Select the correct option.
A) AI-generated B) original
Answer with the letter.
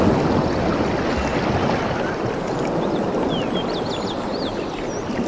B